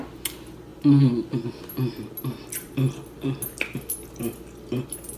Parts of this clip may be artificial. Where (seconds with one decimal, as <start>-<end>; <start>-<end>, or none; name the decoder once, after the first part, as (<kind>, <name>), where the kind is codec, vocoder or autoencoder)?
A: none